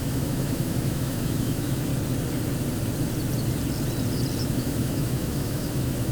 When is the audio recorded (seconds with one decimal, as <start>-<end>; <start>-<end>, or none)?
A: 1.9-4.4